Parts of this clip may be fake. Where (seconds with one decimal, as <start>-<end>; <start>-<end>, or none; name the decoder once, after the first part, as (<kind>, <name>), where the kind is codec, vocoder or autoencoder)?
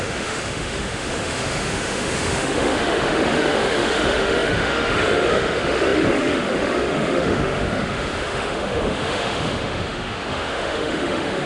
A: 0.0-11.5 (autoencoder, DAC-VAE)